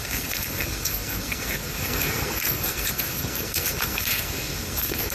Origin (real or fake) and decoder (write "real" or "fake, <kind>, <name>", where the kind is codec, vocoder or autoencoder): fake, codec, SNAC